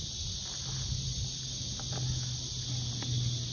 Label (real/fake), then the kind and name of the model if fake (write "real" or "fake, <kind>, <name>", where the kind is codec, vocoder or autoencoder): real